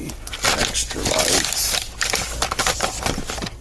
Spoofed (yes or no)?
no